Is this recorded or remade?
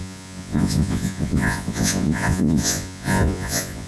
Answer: remade